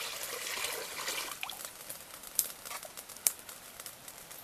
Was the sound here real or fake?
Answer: fake